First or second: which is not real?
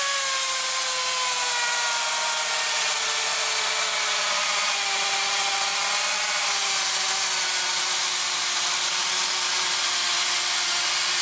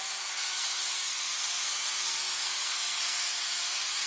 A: second